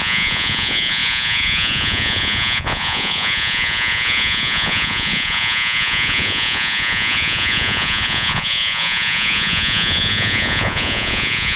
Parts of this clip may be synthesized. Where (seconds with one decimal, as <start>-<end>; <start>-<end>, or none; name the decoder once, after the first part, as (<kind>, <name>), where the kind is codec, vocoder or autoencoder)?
0.0-11.6 (vocoder, Vocos)